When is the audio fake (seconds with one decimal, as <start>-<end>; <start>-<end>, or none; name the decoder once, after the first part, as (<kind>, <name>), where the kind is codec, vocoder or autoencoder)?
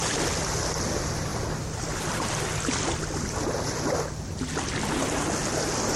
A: none